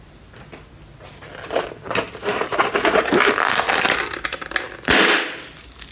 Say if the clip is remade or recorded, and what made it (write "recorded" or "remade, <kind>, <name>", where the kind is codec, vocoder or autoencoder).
recorded